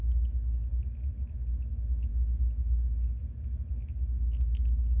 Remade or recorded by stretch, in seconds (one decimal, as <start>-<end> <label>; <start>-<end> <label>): 0.0-5.0 recorded